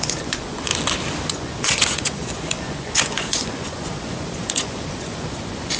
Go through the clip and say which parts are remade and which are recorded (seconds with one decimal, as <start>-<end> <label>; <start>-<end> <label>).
0.0-0.7 remade; 0.7-1.3 recorded; 1.3-5.8 remade